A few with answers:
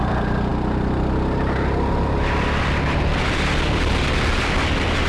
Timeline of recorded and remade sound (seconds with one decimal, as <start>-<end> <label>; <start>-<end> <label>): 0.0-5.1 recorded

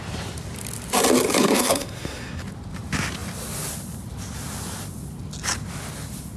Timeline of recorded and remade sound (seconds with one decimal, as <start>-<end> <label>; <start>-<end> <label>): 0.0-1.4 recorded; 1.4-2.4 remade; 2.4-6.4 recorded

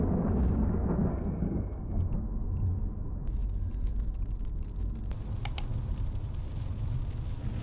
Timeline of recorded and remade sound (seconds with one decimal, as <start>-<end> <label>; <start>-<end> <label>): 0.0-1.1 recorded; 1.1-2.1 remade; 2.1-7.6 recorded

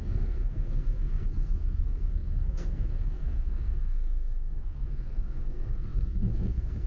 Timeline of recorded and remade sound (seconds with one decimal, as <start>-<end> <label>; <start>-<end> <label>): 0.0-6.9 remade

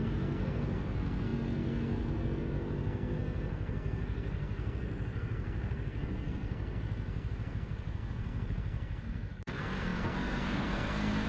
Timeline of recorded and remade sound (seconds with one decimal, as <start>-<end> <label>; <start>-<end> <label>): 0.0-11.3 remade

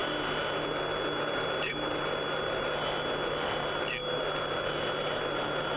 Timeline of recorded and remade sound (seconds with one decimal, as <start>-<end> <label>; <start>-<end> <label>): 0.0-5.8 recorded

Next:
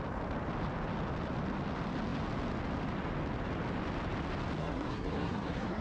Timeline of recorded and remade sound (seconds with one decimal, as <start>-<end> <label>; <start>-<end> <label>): 0.0-4.6 recorded; 4.6-5.8 remade